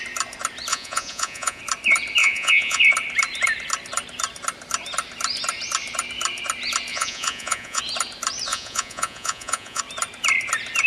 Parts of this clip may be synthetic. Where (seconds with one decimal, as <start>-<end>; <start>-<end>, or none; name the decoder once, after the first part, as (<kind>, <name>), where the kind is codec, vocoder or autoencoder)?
0.7-1.6 (vocoder, Vocos); 2.2-2.8; 6.9-7.8; 8.5-9.8